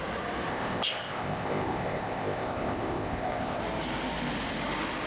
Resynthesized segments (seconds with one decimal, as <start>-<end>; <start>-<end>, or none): 0.5-3.6